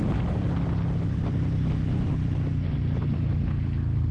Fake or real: real